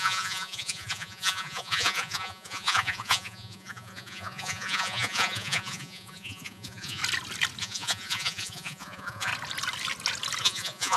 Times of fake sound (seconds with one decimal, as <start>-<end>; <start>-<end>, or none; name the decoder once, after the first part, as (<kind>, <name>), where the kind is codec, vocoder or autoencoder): 0.0-7.0 (vocoder, Vocos); 7.6-9.3; 10.4-11.0